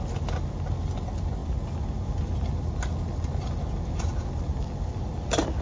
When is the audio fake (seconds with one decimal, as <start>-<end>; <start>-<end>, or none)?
none